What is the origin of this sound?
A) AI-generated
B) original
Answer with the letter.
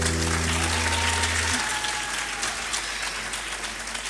B